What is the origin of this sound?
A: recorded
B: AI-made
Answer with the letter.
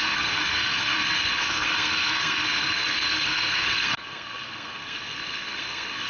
B